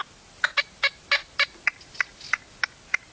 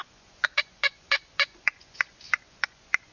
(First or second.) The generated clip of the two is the second